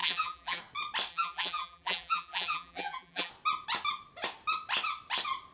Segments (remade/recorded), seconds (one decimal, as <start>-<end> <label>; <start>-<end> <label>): 0.0-0.6 remade; 0.6-1.1 recorded; 1.1-3.3 remade; 3.3-5.5 recorded